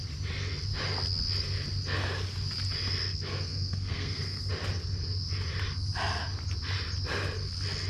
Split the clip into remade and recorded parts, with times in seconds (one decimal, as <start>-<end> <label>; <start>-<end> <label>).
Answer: 0.0-3.1 recorded; 3.1-4.5 remade; 4.5-7.9 recorded